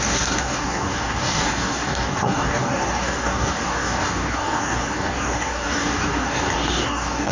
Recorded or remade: remade